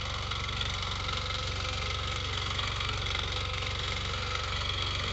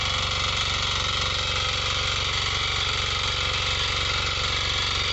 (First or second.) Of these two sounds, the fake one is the first